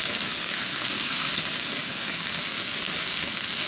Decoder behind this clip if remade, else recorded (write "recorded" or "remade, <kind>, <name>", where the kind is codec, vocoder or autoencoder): remade, codec, SNAC